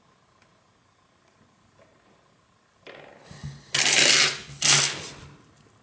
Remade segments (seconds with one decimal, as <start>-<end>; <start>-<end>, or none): none

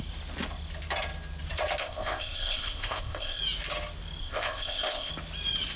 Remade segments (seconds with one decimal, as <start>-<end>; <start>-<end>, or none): 1.8-3.4; 4.2-5.1

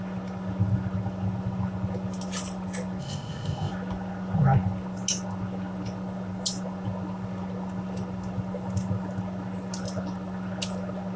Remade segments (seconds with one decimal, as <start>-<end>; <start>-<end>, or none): 3.0-3.7

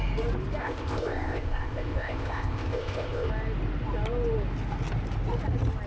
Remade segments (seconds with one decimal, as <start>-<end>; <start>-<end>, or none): 0.6-3.3

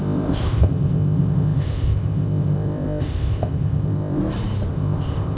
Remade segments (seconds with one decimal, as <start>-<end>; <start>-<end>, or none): 0.0-4.2; 4.7-5.4

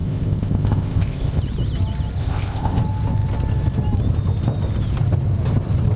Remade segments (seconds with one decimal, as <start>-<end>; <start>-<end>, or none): 0.0-1.4; 2.2-2.8

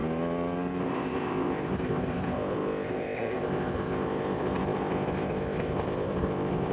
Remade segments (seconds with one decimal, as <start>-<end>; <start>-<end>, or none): 0.8-6.7

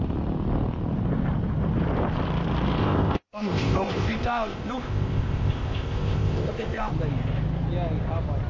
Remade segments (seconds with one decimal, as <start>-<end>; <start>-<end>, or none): 2.8-6.9